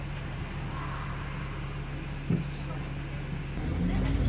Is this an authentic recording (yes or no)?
yes